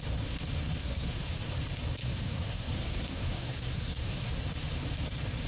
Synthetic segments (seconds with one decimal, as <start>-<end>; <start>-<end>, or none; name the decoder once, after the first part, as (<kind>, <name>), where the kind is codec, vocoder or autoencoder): 0.8-1.4 (codec, SNAC); 2.0-4.3